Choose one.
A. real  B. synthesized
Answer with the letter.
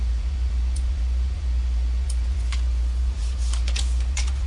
B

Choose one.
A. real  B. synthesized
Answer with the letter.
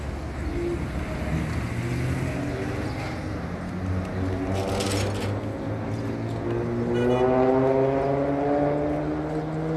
A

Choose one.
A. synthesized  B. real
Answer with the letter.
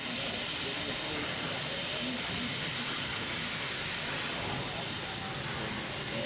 B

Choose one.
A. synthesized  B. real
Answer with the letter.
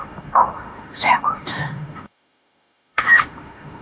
A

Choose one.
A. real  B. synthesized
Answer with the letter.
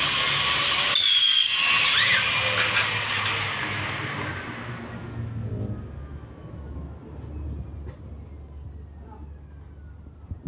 A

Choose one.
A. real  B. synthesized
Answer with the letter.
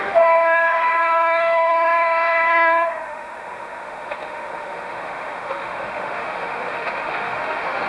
B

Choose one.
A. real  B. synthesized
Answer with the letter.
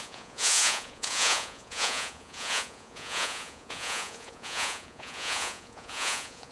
B